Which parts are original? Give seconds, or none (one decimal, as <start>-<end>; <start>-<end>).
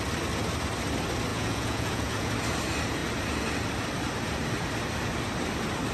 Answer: 0.0-1.3; 2.3-5.9